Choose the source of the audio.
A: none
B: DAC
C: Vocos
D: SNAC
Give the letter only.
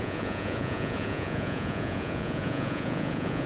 C